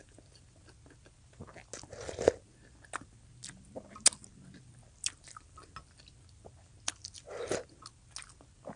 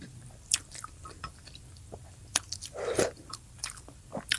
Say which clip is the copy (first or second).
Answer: second